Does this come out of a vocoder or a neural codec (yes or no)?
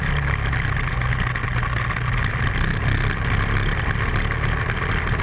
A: no